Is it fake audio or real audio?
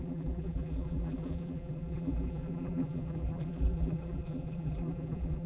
fake